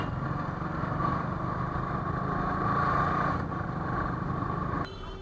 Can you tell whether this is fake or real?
real